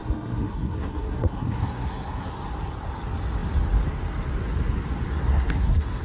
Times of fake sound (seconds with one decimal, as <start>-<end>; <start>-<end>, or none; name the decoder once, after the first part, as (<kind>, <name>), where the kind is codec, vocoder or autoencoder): 0.0-2.3 (codec, SNAC); 5.1-6.0